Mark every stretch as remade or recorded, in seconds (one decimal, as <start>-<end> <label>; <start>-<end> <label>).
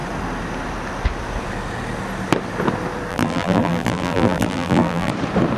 0.0-3.1 recorded; 3.1-5.1 remade; 5.1-5.6 recorded